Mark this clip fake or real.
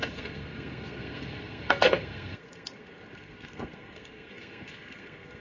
fake